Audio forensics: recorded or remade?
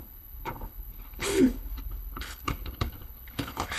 remade